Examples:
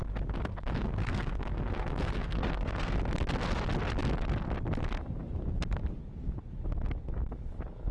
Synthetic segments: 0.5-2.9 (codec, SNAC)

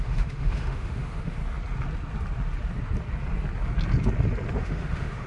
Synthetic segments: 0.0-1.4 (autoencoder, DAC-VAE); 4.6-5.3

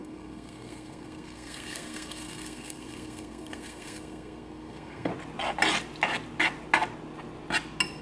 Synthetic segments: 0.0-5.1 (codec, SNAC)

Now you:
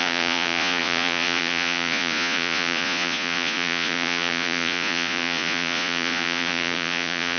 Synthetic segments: 0.0-7.4 (vocoder, Vocos)

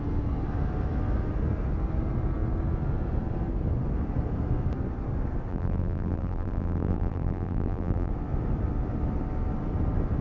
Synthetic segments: 5.5-8.1 (vocoder, BigVGAN v2)

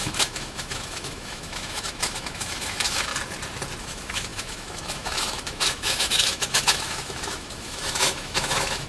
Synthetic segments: 0.0-3.1 (autoencoder, DAC-VAE); 3.8-8.9

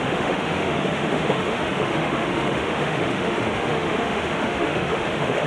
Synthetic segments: 0.0-5.5 (autoencoder, DAC-VAE)

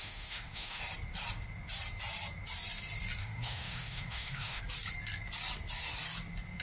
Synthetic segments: 0.0-0.8 (autoencoder, DAC-VAE); 3.2-4.6